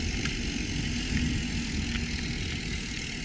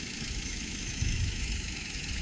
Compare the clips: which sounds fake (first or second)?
second